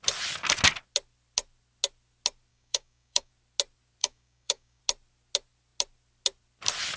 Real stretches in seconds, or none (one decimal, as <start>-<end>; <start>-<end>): 0.0-2.5; 3.3-4.0; 4.8-7.0

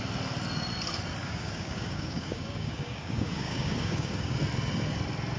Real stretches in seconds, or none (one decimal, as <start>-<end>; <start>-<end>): 0.0-1.2; 4.4-5.4